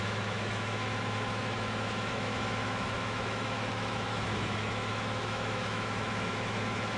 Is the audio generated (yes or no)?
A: yes